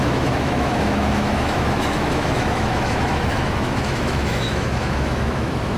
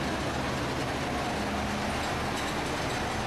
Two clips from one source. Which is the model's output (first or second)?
first